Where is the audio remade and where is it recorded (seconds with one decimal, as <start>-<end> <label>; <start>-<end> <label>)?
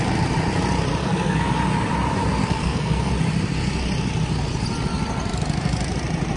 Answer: 0.0-1.0 recorded; 1.0-1.5 remade; 1.5-2.4 recorded; 2.4-3.1 remade; 3.1-6.4 recorded